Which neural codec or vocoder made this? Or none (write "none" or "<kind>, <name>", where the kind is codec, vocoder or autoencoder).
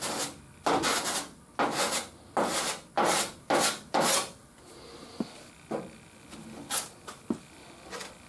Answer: none